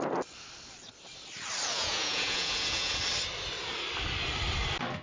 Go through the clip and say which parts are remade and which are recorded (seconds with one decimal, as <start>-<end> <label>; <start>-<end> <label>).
0.0-1.7 recorded; 1.7-3.0 remade; 3.0-5.0 recorded